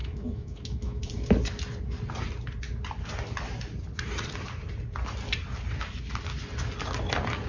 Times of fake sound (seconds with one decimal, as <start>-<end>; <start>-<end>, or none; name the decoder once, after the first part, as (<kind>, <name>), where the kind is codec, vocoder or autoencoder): 0.0-1.0 (autoencoder, DAC-VAE)